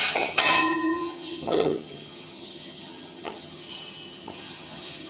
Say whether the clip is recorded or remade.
remade